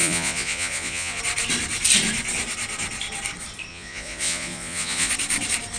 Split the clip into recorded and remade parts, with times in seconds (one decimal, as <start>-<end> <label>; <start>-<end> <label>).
0.0-1.2 remade; 1.2-3.7 recorded; 3.7-5.1 remade; 5.1-5.8 recorded